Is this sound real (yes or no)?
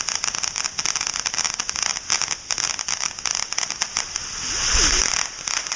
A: yes